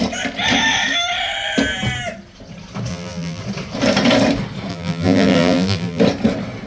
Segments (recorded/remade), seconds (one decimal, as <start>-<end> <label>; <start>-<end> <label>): 0.0-2.9 recorded; 2.9-3.4 remade; 3.4-4.7 recorded; 4.7-6.0 remade; 6.0-6.7 recorded